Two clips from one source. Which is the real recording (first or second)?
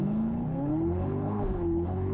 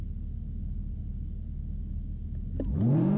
second